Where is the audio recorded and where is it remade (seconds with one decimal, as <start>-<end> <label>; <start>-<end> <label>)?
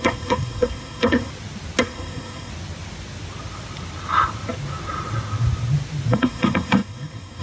0.0-1.3 remade; 1.3-1.8 recorded; 1.8-2.5 remade; 2.5-6.1 recorded; 6.1-7.4 remade